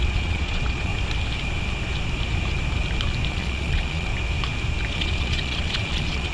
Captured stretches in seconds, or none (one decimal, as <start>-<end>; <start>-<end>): 0.9-3.3; 4.1-4.9